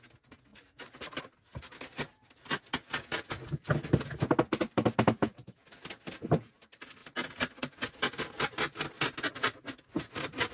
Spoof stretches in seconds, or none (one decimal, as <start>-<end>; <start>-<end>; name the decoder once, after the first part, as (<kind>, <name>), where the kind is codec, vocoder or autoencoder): 0.5-1.2 (vocoder, BigVGAN v2)